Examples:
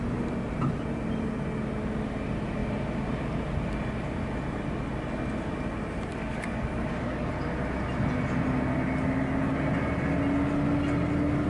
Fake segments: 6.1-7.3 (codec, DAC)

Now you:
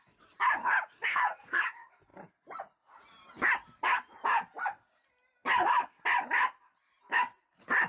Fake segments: 1.1-1.6 (codec, SNAC)

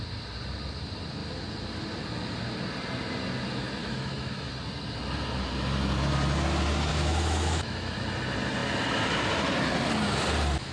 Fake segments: 3.8-4.5 (autoencoder, DAC-VAE); 6.9-7.9

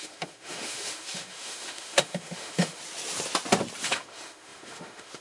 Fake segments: 0.0-2.8 (autoencoder, DAC-VAE); 3.8-5.2

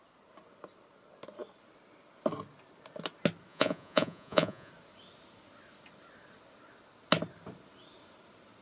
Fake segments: 3.5-4.7 (vocoder, Vocos)

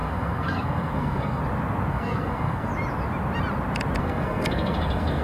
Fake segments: 0.0-1.4 (codec, SNAC); 1.9-2.7; 4.0-5.2